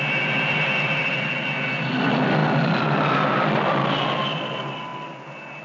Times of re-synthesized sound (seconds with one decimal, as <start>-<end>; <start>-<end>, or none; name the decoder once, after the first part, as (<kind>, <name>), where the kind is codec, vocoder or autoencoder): none